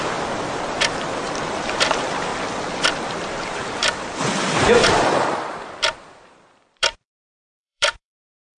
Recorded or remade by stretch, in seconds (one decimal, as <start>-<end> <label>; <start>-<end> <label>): 0.0-2.3 remade; 2.3-3.3 recorded; 3.3-8.6 remade